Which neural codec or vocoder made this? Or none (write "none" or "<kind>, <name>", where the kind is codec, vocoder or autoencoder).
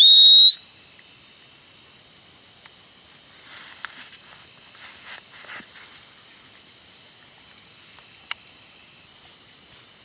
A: none